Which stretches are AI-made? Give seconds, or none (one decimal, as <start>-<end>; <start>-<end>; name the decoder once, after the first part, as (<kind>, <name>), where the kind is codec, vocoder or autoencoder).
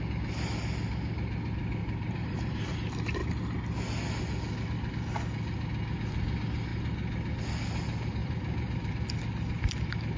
1.8-2.7 (vocoder, BigVGAN v2); 8.2-8.9